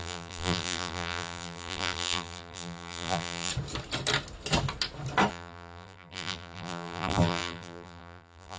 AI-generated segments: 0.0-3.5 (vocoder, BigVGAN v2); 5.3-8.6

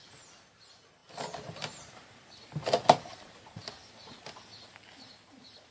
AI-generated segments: none

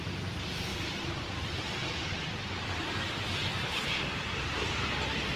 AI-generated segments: 0.7-3.9 (vocoder, BigVGAN v2)

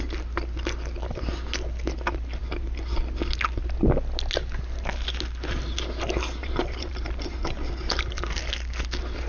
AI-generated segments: 6.4-8.4 (vocoder, BigVGAN v2)